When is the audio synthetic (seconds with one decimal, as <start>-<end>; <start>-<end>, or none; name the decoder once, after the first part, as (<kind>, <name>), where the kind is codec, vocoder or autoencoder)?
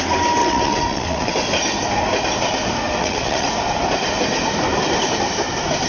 0.4-1.3 (vocoder, WaveNeXt); 3.0-3.5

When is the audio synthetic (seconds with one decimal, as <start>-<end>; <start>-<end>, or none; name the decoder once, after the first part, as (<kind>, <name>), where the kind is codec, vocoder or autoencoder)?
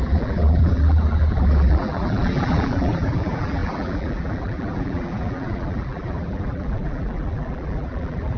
0.0-8.4 (vocoder, BigVGAN v2)